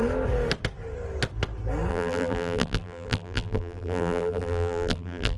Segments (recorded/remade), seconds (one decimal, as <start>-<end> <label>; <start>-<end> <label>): 0.0-1.9 recorded; 1.9-5.4 remade